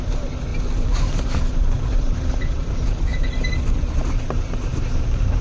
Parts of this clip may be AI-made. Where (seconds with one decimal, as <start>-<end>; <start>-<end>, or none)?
0.0-0.5; 1.4-3.1; 4.2-5.4